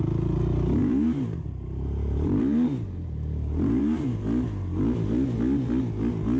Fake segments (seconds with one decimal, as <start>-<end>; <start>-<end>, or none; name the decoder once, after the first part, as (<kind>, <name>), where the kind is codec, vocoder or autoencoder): 0.8-4.2 (vocoder, BigVGAN v2)